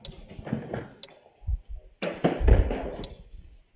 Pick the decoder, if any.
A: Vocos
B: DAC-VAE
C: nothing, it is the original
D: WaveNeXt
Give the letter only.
C